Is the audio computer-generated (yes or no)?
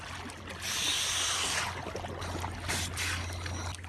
no